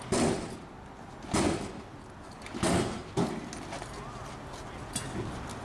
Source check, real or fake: real